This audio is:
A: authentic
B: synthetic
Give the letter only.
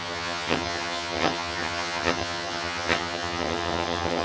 B